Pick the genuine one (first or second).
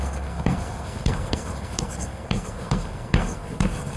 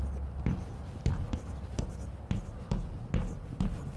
second